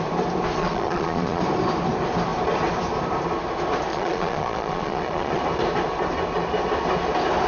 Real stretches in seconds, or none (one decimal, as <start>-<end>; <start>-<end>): 0.0-0.6; 1.4-3.9; 5.4-7.5